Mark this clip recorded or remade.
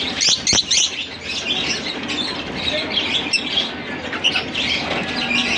recorded